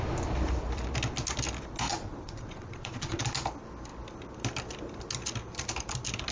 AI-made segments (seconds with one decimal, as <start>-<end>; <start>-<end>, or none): 1.9-3.2